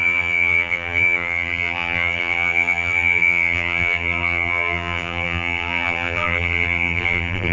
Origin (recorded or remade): remade